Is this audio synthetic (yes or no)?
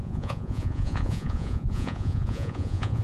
yes